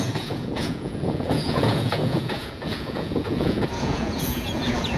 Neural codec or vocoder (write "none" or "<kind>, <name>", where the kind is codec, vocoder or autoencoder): vocoder, Vocos